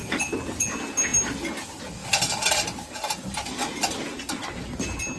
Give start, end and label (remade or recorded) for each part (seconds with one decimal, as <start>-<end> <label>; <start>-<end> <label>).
0.0-0.6 remade; 0.6-5.2 recorded